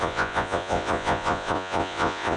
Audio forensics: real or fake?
fake